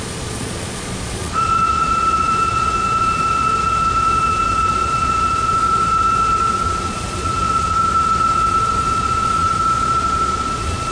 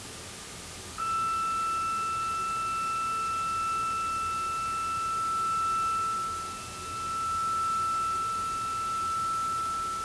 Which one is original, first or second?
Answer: second